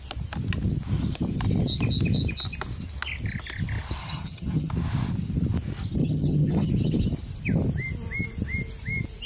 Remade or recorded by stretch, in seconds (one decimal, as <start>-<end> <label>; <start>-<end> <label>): 0.0-4.0 recorded; 4.0-4.7 remade; 4.7-6.0 recorded; 6.0-6.7 remade; 6.7-9.3 recorded